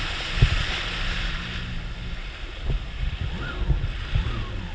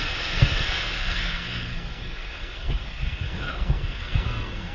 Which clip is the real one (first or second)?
first